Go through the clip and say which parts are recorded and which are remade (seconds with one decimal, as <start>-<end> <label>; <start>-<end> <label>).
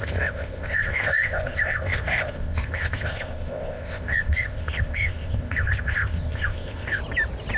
0.0-7.0 remade; 7.0-7.6 recorded